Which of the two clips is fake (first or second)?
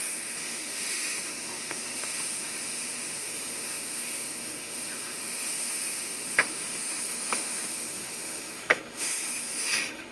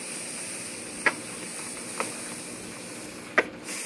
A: first